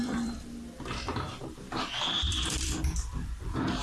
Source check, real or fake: fake